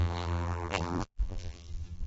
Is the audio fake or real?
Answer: fake